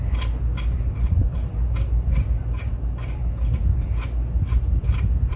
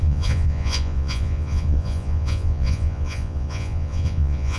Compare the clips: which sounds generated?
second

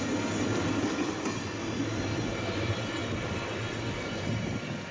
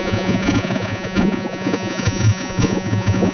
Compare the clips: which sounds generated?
second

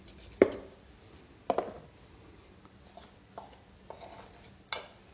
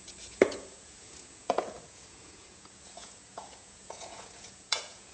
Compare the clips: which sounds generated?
second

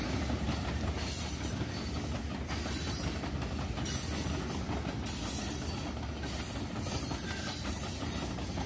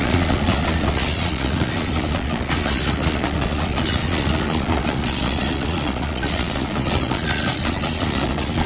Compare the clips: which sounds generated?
second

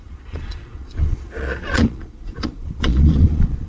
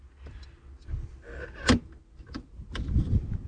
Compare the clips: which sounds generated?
first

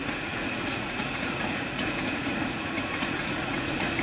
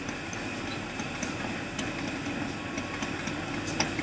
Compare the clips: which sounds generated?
first